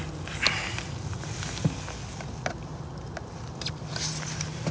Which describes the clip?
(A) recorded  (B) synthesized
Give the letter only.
A